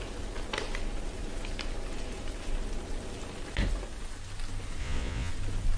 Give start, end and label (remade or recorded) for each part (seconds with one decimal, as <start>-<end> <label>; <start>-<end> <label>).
0.0-4.8 recorded; 4.8-5.3 remade; 5.3-5.8 recorded